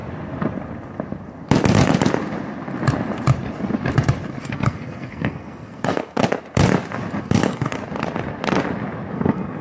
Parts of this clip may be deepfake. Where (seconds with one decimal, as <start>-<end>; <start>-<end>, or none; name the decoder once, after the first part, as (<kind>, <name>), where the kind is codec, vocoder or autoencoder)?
4.4-6.2 (codec, SNAC); 7.2-7.8; 9.1-9.6